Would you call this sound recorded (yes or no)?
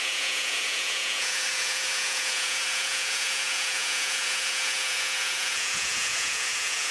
no